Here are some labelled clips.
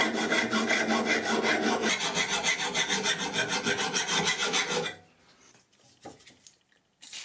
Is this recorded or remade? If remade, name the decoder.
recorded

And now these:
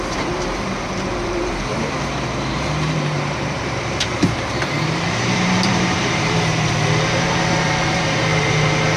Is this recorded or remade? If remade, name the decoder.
remade, vocoder, BigVGAN v2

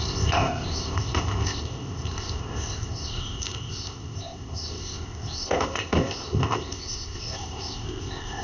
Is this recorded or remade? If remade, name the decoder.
remade, codec, ZipCodec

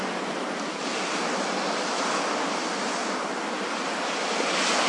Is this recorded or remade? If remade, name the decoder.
recorded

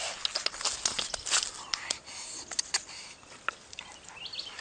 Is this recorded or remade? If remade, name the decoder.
recorded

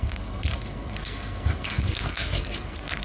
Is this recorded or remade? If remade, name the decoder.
remade, codec, SNAC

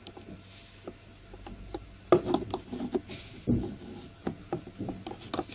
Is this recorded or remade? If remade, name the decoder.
recorded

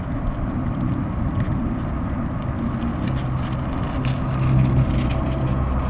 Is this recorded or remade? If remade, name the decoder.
recorded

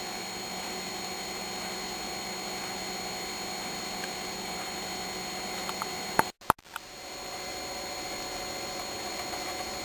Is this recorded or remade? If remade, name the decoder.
recorded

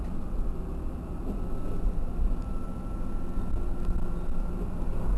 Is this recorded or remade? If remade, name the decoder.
recorded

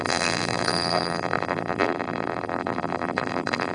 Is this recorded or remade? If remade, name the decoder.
remade, vocoder, BigVGAN v2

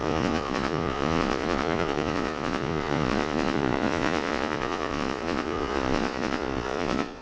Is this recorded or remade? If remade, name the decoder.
remade, vocoder, Vocos